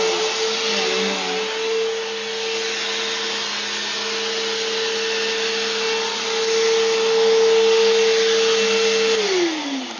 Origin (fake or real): real